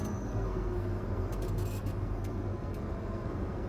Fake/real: fake